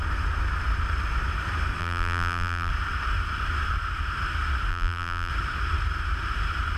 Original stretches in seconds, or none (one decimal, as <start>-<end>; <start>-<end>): 0.0-1.8; 2.7-4.7; 5.3-6.8